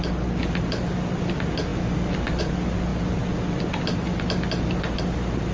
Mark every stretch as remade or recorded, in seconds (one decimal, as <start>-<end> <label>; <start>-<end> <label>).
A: 0.0-5.5 recorded